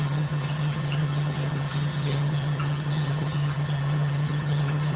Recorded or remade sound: remade